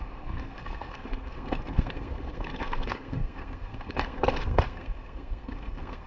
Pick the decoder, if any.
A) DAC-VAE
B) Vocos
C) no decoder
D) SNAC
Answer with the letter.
D